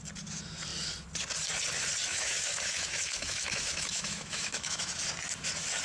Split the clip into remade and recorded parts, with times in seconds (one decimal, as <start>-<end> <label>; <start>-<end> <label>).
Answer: 0.0-2.1 recorded; 2.1-4.9 remade; 4.9-5.8 recorded